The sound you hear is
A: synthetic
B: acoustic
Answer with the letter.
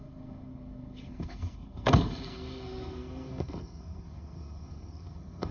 A